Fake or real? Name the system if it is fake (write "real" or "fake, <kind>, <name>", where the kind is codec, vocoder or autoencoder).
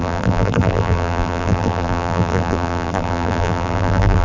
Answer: fake, vocoder, BigVGAN v2